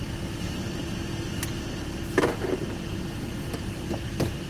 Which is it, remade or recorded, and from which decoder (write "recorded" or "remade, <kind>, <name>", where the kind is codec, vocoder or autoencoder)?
recorded